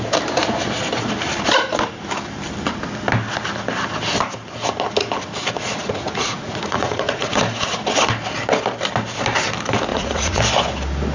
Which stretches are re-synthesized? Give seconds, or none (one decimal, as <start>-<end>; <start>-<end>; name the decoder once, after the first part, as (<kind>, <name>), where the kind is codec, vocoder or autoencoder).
5.8-7.4 (vocoder, Vocos); 9.9-10.4